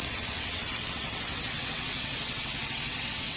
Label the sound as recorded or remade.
remade